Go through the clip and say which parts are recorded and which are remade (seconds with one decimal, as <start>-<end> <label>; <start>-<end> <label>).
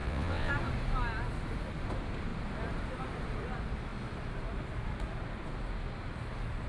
0.0-0.5 remade; 0.5-6.7 recorded